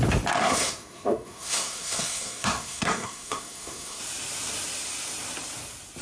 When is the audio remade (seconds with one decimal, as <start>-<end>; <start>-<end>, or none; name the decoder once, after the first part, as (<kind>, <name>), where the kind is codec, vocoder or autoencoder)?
0.4-4.0 (codec, SNAC)